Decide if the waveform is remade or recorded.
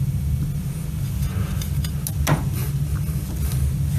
recorded